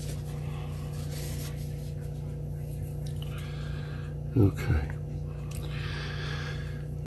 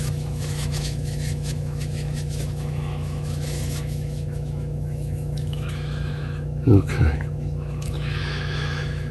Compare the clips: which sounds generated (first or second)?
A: second